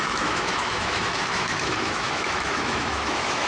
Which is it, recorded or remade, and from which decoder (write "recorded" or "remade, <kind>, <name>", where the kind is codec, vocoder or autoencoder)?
remade, autoencoder, DAC-VAE